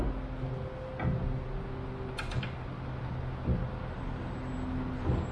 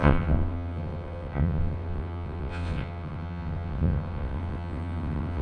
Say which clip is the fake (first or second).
second